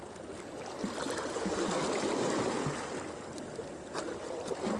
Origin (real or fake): real